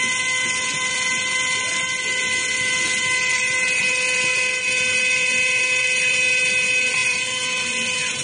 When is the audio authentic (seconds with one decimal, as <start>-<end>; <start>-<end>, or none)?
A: 0.0-8.2

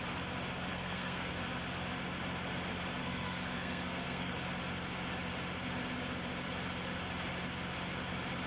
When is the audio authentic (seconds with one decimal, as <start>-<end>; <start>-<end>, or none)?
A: 0.0-0.7; 1.3-3.0; 4.3-8.5

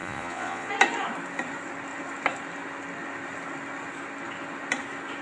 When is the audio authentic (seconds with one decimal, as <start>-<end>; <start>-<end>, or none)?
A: 0.7-5.2

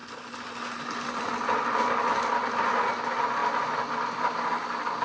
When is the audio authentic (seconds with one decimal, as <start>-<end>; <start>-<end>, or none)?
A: 0.0-5.0